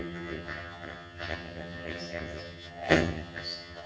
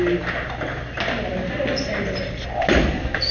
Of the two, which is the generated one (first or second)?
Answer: first